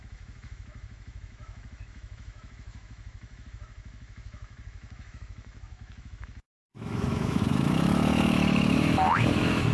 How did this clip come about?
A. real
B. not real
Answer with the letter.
B